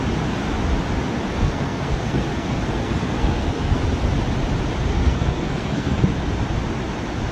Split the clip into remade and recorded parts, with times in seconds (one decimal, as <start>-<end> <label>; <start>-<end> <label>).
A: 0.0-1.3 recorded; 1.3-3.8 remade; 3.8-4.9 recorded; 4.9-6.0 remade; 6.0-7.3 recorded